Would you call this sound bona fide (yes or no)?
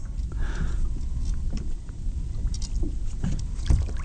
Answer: yes